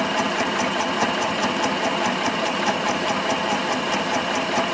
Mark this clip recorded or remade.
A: remade